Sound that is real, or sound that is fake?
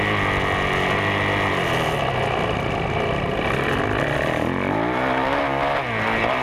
real